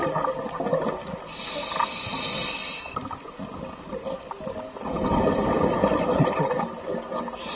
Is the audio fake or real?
real